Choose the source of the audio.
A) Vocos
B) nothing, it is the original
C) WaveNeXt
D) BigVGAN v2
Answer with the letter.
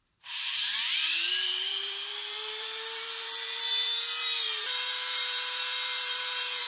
D